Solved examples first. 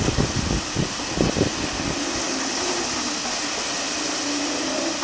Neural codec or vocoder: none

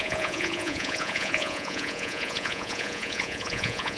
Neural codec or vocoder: vocoder, Vocos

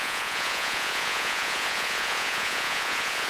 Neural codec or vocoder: vocoder, Vocos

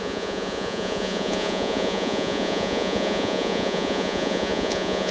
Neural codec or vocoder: vocoder, Vocos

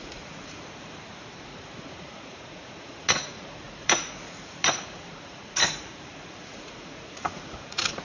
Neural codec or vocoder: vocoder, Vocos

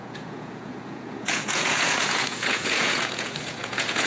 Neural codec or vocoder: vocoder, Vocos